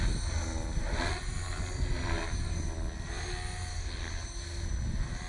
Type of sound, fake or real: real